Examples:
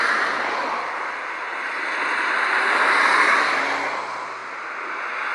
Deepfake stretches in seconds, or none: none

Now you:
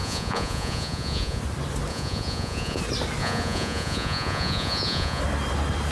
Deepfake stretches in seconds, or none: 0.0-1.4 (vocoder, Vocos); 1.9-2.8; 3.2-5.2

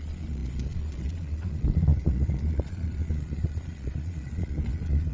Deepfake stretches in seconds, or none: 0.0-5.1 (vocoder, Vocos)

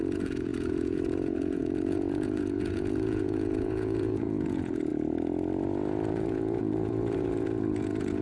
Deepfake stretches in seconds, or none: 0.0-4.9 (vocoder, Vocos); 6.1-8.2

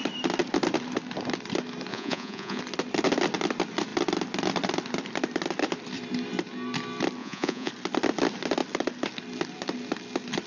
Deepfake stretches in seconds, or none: 1.9-2.6 (vocoder, Vocos); 7.2-7.7

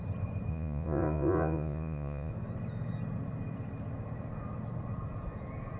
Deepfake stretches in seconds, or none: 0.5-2.3 (vocoder, Vocos)

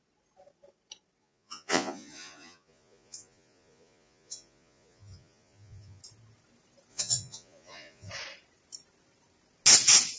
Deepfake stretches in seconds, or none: 1.2-6.0 (vocoder, Vocos); 6.9-8.1

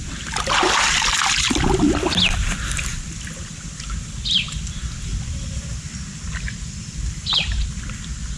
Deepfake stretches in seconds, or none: none